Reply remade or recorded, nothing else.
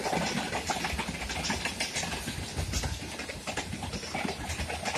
recorded